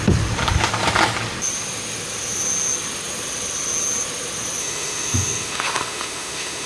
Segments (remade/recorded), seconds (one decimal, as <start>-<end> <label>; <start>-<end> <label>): 0.0-4.6 recorded; 4.6-6.7 remade